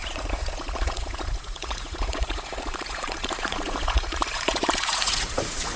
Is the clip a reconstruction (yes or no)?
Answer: yes